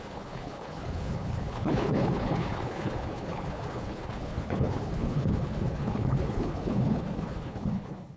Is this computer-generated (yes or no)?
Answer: yes